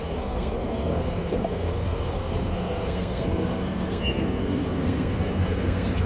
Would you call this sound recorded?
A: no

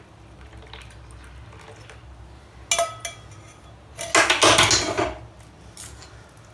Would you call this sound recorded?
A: yes